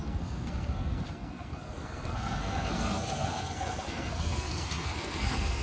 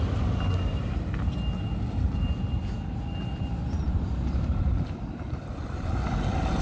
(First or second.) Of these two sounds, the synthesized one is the first